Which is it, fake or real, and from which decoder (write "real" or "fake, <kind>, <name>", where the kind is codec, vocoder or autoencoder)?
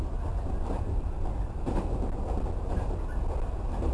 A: real